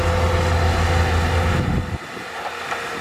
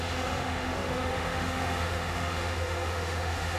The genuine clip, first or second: first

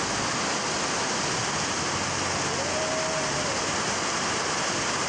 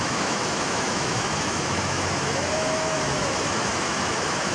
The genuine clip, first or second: first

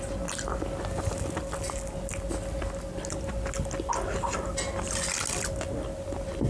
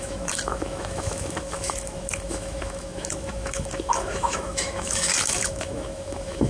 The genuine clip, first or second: first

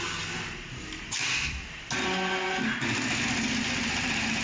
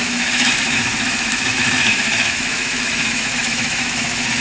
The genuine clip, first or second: first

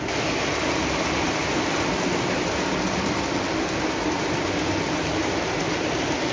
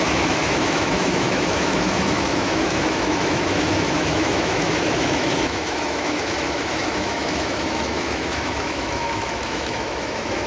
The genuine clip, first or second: first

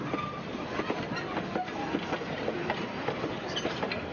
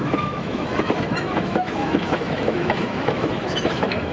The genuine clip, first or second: first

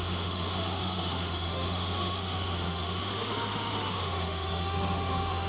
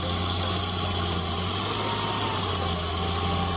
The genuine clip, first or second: second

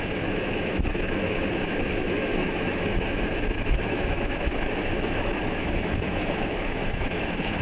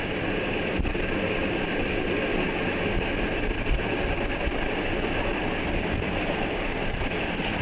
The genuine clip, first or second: second